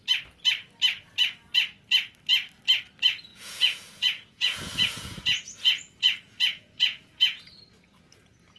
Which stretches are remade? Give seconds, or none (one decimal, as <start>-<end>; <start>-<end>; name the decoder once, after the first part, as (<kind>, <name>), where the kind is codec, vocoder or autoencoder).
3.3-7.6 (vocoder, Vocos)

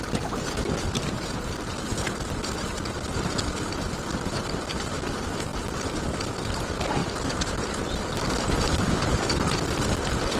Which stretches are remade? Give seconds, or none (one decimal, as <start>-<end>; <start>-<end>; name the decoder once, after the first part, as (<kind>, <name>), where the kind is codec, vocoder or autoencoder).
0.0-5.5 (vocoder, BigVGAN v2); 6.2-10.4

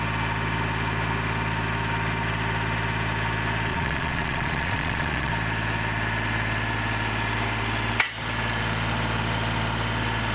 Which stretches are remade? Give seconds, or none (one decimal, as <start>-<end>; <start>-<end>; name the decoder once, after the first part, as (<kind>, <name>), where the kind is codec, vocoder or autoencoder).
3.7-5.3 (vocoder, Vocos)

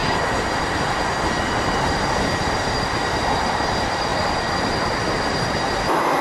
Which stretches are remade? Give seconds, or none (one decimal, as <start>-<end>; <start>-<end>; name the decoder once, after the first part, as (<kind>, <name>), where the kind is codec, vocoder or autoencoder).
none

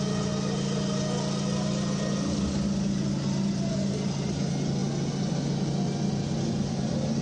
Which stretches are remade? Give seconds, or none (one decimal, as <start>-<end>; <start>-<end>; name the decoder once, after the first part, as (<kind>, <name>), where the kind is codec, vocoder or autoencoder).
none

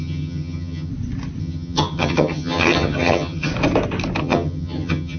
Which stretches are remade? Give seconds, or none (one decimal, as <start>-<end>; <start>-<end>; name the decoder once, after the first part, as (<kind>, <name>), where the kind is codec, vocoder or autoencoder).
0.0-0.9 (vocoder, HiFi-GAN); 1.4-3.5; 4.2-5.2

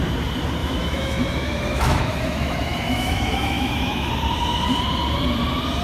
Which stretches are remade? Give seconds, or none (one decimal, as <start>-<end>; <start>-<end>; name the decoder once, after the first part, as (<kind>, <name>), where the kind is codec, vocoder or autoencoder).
0.6-4.1 (autoencoder, DAC-VAE)